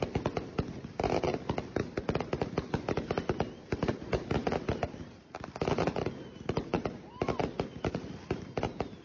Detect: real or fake fake